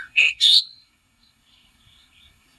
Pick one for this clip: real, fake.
fake